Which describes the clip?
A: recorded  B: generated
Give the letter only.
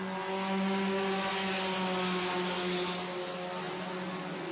A